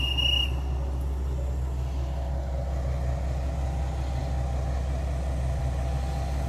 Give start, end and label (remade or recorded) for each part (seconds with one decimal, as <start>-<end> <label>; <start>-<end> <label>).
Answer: 0.0-6.5 recorded